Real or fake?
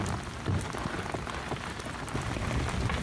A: real